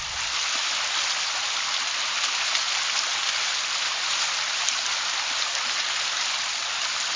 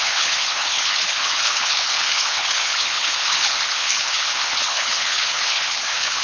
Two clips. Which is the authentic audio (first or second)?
first